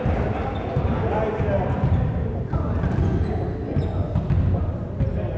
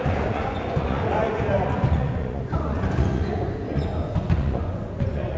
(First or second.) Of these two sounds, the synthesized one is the second